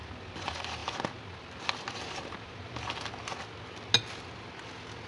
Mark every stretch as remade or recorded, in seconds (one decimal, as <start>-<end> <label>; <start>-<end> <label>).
0.0-5.1 recorded